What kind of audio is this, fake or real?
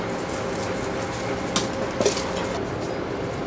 real